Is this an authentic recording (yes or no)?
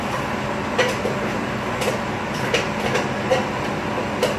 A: yes